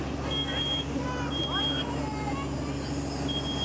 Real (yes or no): yes